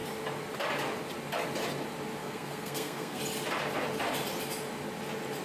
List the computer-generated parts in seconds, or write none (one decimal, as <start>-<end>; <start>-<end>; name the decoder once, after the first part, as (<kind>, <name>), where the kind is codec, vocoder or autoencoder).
2.2-3.2 (codec, SNAC)

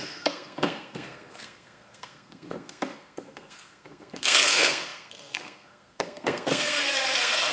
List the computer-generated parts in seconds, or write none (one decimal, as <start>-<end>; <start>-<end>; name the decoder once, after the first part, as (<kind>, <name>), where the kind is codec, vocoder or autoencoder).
0.0-7.5 (codec, SNAC)

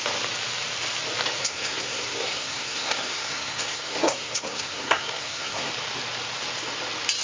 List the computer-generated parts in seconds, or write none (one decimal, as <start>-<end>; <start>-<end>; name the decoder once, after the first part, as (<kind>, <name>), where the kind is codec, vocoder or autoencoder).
1.4-5.7 (codec, SNAC)

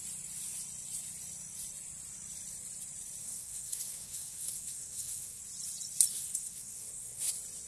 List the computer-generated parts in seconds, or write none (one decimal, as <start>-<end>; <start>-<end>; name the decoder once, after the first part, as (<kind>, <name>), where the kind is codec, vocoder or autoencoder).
3.2-5.4 (codec, SNAC); 6.1-7.3

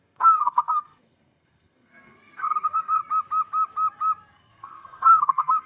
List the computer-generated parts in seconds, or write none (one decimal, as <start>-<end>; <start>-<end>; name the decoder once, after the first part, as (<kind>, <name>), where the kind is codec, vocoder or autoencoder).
0.0-3.0 (codec, SNAC); 4.5-5.7

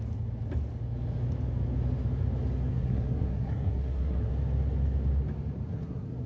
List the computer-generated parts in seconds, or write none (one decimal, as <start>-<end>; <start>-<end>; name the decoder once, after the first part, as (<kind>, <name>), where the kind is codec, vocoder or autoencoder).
2.7-4.3 (codec, SNAC); 5.7-6.3